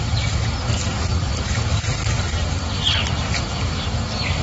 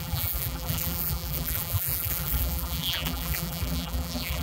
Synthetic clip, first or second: second